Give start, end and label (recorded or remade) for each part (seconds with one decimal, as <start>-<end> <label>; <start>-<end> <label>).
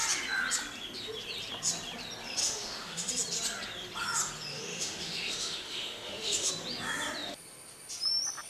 0.0-2.4 recorded; 2.4-3.1 remade; 3.1-4.5 recorded; 4.5-6.5 remade; 6.5-8.5 recorded